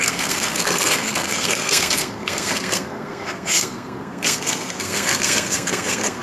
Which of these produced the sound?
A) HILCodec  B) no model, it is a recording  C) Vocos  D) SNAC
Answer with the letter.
D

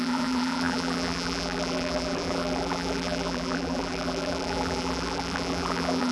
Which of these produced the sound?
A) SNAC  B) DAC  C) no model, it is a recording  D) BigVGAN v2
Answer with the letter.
D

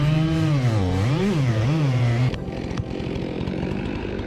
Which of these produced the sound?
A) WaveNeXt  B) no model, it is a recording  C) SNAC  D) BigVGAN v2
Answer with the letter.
D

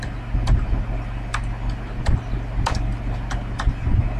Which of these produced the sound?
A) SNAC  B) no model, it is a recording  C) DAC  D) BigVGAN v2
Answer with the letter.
B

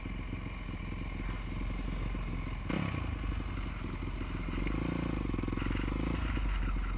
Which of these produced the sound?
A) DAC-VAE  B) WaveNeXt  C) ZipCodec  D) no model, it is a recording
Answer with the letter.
D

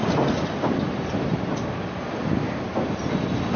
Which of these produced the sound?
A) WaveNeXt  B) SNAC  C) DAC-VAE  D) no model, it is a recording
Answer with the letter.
D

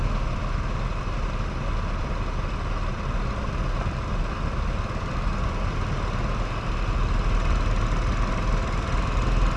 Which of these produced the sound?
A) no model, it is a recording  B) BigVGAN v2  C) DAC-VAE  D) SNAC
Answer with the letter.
A